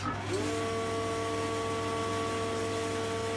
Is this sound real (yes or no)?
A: yes